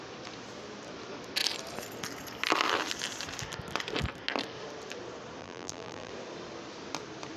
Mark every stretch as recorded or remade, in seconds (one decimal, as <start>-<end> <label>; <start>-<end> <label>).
0.0-5.4 recorded; 5.4-6.1 remade; 6.1-7.4 recorded